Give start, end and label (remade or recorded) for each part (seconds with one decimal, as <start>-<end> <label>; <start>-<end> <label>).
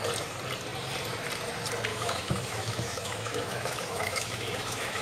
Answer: 0.0-1.9 recorded; 1.9-5.0 remade